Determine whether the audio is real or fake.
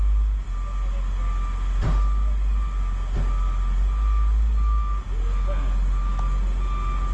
real